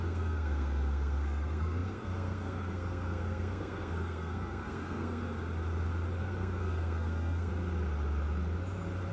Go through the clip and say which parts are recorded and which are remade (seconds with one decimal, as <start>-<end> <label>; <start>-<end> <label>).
0.0-5.2 remade; 5.2-6.2 recorded; 6.2-7.5 remade; 7.5-9.1 recorded